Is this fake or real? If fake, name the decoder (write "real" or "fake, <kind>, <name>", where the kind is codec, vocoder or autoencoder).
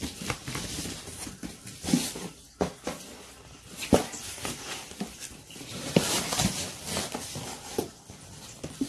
real